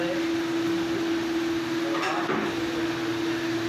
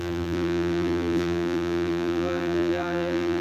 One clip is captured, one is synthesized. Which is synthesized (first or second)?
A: second